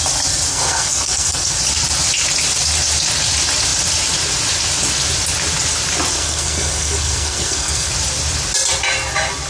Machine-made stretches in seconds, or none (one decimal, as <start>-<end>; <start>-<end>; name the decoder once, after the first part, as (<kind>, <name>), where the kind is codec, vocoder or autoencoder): 0.5-1.6 (codec, SNAC); 6.1-7.9